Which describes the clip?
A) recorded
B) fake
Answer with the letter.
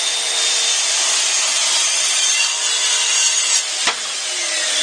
A